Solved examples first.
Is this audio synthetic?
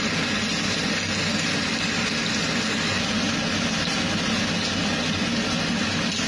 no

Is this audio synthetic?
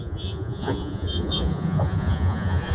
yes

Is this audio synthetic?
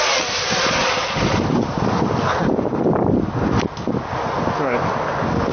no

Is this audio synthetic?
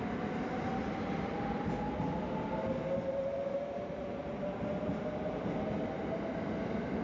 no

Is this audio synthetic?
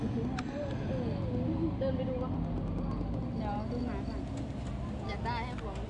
no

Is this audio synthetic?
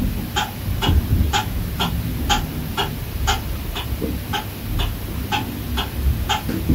no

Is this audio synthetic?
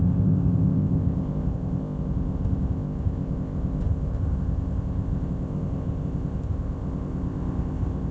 yes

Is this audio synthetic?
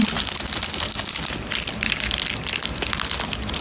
yes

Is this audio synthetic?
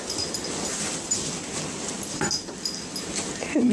no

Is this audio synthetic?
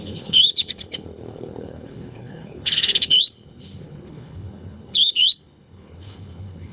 yes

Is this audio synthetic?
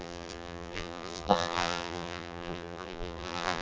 yes